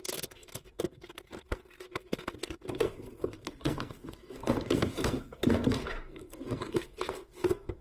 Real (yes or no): no